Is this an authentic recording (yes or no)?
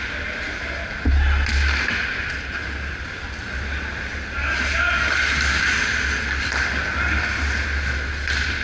yes